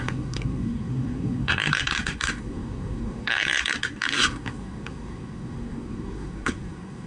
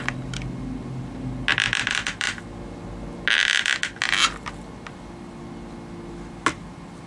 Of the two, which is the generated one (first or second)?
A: first